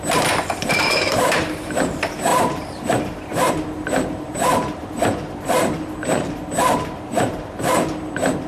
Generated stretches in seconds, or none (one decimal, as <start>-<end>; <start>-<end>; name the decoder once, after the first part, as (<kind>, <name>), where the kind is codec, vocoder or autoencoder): 0.0-8.5 (vocoder, BigVGAN v2)